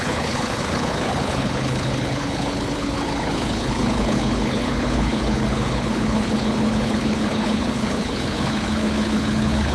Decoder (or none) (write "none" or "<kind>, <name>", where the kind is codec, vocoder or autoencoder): codec, HILCodec